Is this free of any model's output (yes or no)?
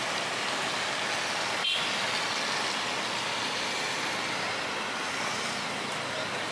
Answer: yes